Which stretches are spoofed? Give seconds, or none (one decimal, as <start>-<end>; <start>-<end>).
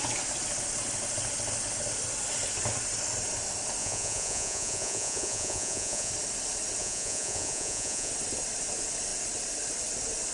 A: 3.8-6.1; 6.8-8.1